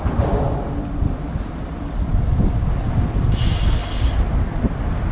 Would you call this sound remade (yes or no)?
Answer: no